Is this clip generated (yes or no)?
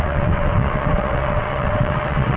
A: yes